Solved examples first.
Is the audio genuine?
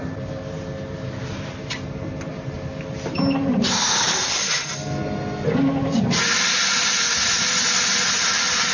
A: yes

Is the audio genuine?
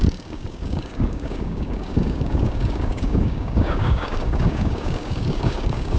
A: no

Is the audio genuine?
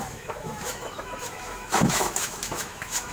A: no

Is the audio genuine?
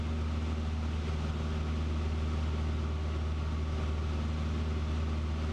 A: yes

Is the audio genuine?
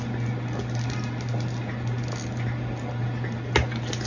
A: yes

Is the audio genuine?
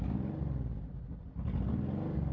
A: yes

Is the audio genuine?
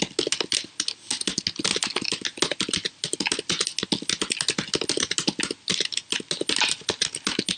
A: yes